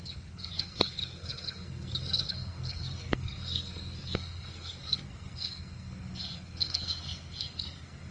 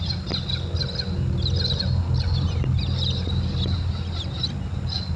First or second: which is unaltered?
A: second